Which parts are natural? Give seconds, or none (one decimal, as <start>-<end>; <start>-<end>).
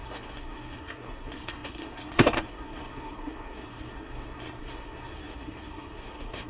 none